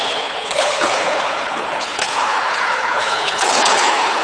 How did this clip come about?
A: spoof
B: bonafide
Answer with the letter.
A